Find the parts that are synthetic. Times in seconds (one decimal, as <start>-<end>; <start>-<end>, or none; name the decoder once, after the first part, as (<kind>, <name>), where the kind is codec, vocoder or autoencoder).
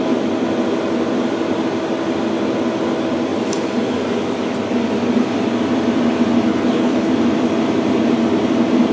6.5-7.1 (codec, HILCodec)